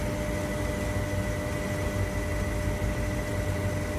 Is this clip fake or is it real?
real